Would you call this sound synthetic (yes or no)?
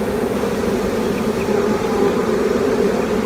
no